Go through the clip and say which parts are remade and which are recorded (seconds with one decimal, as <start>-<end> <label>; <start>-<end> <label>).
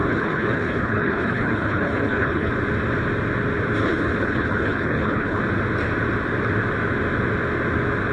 0.0-2.5 remade; 2.5-3.8 recorded; 3.8-5.4 remade; 5.4-8.1 recorded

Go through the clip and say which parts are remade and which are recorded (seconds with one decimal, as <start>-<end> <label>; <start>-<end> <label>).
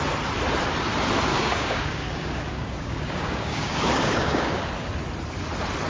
0.0-1.3 recorded; 1.3-4.6 remade; 4.6-5.9 recorded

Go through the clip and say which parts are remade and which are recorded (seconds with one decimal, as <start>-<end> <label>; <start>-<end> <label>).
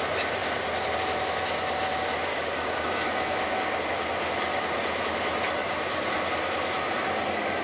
0.0-2.3 recorded; 2.3-3.8 remade; 3.8-5.6 recorded; 5.6-6.2 remade; 6.2-7.6 recorded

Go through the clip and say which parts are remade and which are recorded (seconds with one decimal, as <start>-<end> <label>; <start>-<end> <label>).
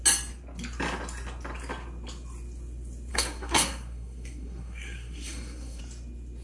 0.0-3.1 recorded; 3.1-5.8 remade; 5.8-6.4 recorded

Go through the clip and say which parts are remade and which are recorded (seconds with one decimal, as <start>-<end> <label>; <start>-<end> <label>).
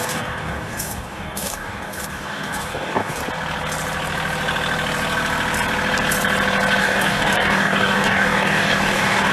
0.0-3.2 remade; 3.2-6.8 recorded; 6.8-9.3 remade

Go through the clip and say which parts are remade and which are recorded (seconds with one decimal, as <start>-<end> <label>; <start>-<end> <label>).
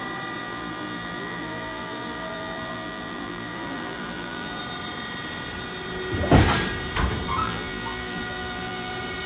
0.0-0.4 recorded; 0.4-4.6 remade; 4.6-7.4 recorded; 7.4-8.9 remade; 8.9-9.3 recorded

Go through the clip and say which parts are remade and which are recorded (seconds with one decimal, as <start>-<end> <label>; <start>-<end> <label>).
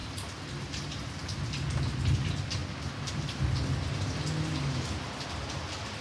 0.0-1.1 remade; 1.1-6.0 recorded